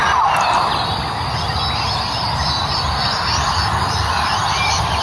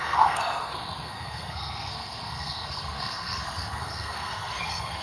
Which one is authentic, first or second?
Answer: first